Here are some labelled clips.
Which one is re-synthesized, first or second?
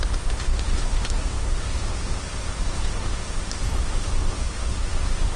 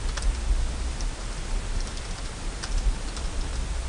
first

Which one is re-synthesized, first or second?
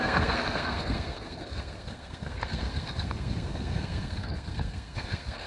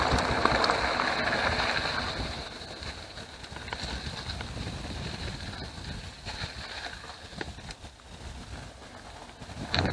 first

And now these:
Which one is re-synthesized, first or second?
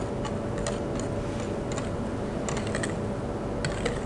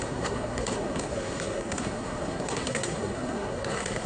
second